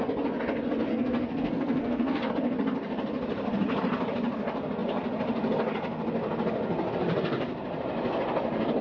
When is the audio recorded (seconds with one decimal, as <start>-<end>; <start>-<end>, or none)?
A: 0.0-0.9; 2.3-8.8